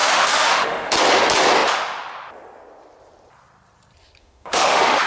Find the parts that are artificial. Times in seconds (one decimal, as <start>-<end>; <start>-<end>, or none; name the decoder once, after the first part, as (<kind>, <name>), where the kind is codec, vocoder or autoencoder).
0.0-0.9 (autoencoder, DAC-VAE); 4.2-5.1